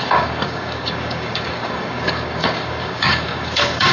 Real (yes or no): no